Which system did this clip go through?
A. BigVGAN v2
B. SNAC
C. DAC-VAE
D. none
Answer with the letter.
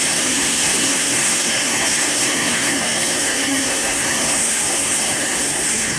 B